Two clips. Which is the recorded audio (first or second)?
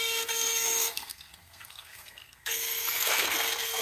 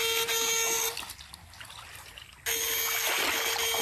second